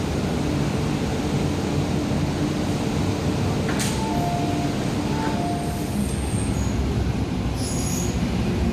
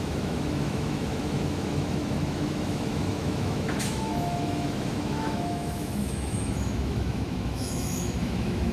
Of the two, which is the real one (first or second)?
first